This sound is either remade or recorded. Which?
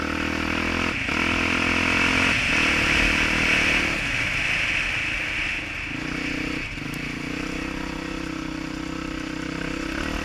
recorded